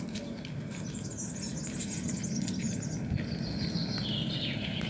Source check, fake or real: real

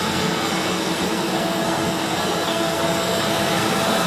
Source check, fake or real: fake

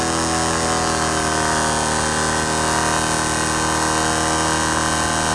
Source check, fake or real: real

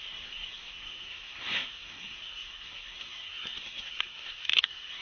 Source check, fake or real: fake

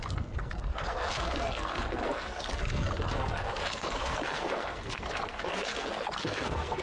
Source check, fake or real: fake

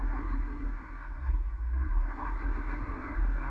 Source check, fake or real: fake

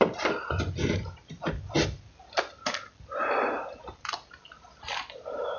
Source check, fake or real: real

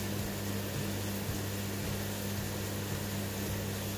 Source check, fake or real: real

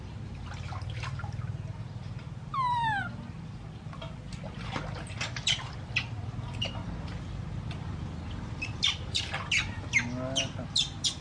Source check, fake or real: real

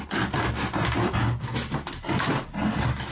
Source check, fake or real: real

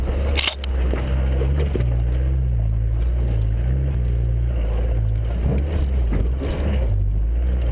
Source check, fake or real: real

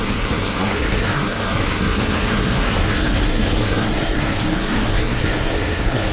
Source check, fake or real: fake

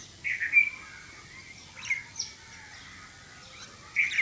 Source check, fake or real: real